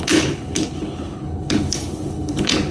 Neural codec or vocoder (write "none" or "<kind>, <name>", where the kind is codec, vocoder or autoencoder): codec, HILCodec